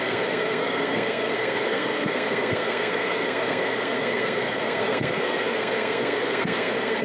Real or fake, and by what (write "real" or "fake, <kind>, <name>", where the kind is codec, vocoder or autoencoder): fake, codec, SNAC